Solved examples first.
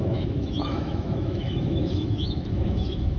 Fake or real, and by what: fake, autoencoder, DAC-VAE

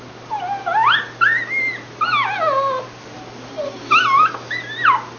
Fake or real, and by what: real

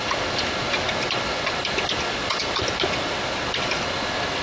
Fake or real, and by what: real